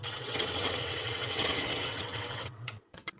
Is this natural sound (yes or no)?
no